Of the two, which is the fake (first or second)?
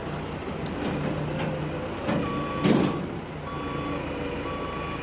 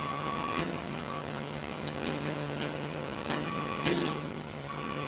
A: second